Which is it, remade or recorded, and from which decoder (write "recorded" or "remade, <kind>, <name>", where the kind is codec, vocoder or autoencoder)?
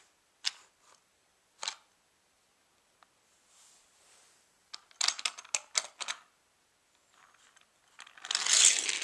recorded